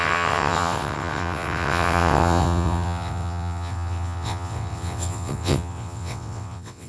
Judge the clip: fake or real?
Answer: fake